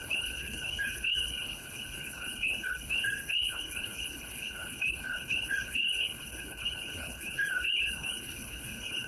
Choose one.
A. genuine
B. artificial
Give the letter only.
B